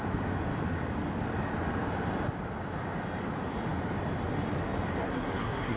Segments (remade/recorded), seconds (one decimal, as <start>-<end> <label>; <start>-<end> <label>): 0.0-5.0 recorded; 5.0-5.8 remade